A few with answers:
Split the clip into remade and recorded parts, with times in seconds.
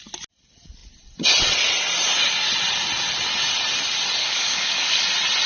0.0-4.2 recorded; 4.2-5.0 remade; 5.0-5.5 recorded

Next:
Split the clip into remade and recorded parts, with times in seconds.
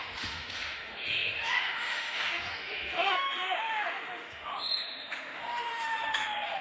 0.0-6.6 remade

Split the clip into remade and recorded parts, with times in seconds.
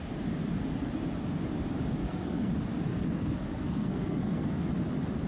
0.0-2.0 recorded; 2.0-2.5 remade; 2.5-2.9 recorded; 2.9-4.7 remade; 4.7-5.3 recorded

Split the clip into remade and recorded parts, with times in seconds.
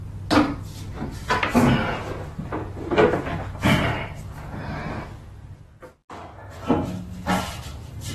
0.0-8.1 recorded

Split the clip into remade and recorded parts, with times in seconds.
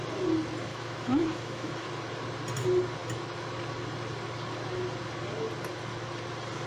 0.0-0.7 recorded; 0.7-1.7 remade; 1.7-6.7 recorded